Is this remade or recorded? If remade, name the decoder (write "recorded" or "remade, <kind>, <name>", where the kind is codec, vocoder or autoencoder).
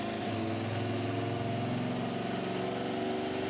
recorded